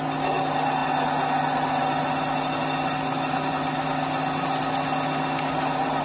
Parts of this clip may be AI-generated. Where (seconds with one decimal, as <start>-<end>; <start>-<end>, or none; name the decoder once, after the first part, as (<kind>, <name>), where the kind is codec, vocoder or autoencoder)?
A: none